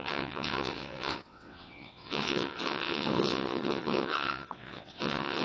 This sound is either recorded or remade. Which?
remade